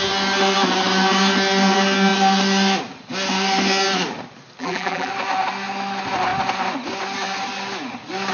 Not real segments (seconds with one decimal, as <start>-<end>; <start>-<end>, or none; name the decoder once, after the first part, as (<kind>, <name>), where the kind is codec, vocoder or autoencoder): 4.6-5.1 (vocoder, BigVGAN v2)